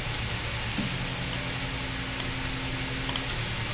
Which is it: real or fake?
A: real